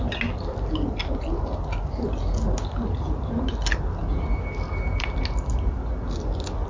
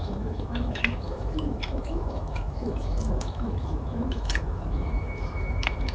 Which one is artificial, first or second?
second